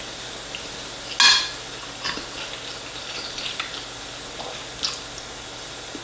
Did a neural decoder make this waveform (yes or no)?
no